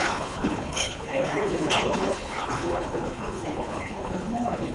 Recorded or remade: remade